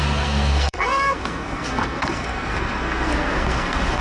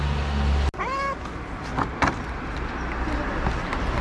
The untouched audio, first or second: second